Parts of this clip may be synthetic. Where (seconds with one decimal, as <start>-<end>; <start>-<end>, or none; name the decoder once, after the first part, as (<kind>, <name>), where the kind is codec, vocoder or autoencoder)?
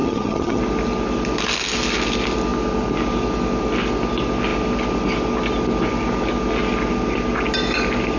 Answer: 0.0-0.6 (vocoder, HiFi-GAN)